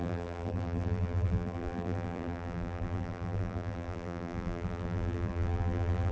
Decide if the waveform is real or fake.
fake